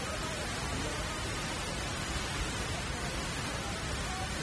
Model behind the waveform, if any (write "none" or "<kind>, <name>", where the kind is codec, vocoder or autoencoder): none